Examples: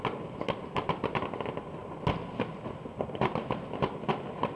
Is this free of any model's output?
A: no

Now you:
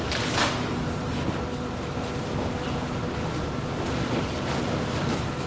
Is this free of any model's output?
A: yes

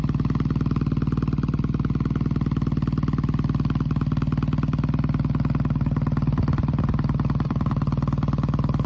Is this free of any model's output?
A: yes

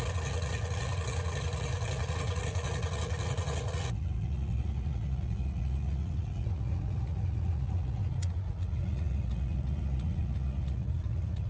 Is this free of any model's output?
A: no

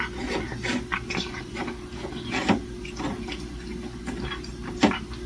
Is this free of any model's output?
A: yes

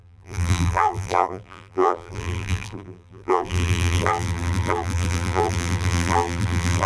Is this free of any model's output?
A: no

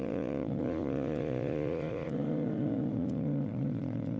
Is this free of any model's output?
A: no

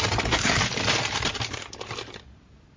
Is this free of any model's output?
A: yes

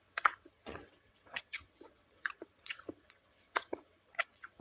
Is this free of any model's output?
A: no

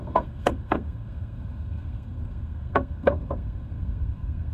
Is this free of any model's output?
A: no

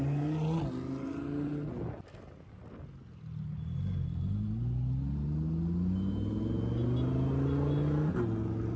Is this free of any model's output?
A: yes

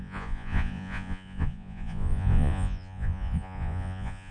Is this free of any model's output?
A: no